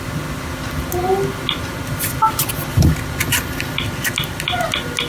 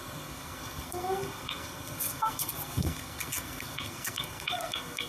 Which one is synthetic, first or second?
second